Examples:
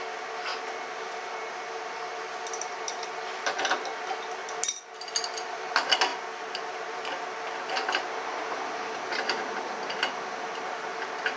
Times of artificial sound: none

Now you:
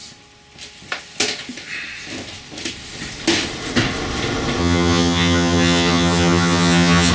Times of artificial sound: 4.6-7.1 (vocoder, HiFi-GAN)

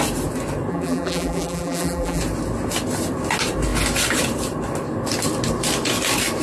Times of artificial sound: 0.7-2.2 (vocoder, BigVGAN v2)

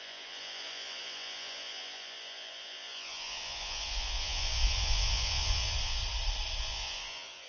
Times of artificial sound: 0.0-6.0 (vocoder, Vocos); 6.6-7.5

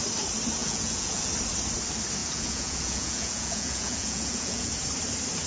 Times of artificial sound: 0.6-1.3 (vocoder, Vocos); 2.2-4.7

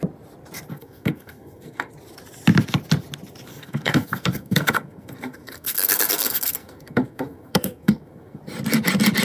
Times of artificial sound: 0.7-1.9 (codec, SNAC); 3.5-8.4